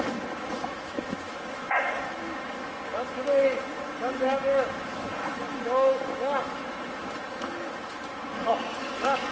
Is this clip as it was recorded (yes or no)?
no